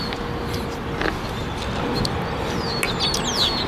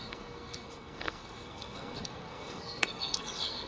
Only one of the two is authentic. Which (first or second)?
first